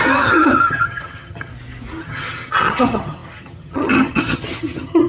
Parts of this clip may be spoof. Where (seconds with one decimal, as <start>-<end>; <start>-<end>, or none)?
0.0-1.5; 2.0-5.1